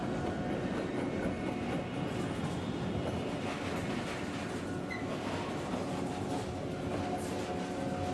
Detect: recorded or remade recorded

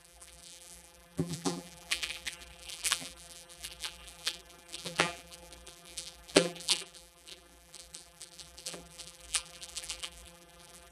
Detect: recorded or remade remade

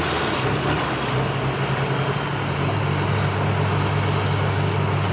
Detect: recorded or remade recorded